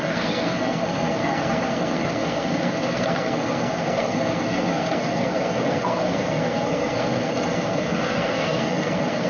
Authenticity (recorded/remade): remade